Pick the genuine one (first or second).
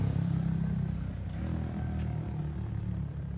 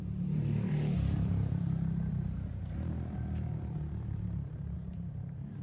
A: first